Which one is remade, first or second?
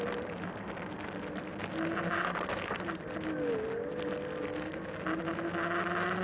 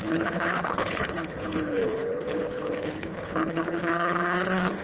second